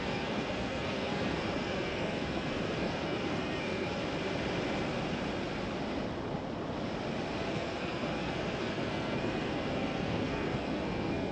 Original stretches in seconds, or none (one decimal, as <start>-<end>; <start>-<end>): 4.0-7.5